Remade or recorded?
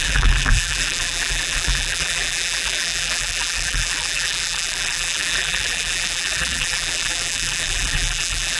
remade